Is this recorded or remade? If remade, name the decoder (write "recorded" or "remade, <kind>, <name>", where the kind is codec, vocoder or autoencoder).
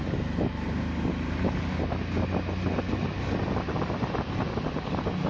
recorded